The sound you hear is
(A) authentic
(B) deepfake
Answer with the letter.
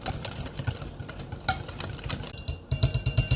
A